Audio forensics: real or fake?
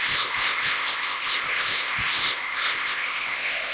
fake